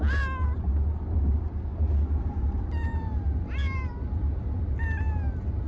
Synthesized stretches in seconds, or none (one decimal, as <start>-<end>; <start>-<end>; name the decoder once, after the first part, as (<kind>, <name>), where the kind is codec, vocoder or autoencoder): none